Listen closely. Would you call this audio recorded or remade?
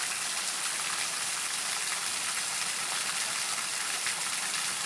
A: recorded